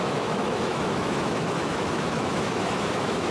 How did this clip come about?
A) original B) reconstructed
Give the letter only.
B